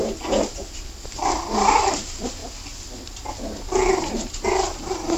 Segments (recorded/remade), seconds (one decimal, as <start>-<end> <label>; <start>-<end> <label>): 0.0-2.4 remade; 2.4-3.6 recorded; 3.6-5.2 remade